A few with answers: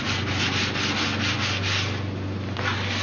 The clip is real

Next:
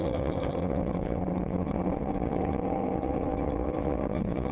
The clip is fake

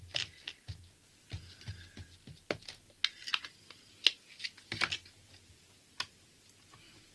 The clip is real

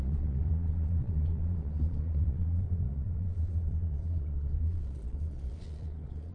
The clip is fake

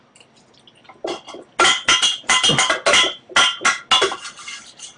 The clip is real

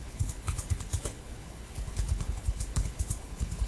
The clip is fake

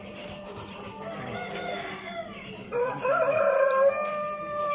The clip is fake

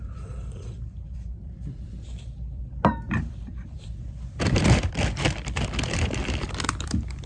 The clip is fake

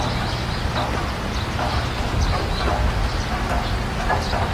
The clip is real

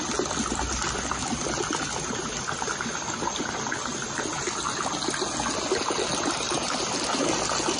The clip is real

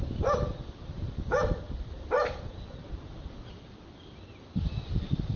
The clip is real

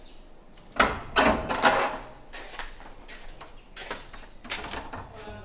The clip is real